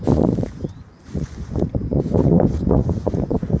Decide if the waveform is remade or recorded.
remade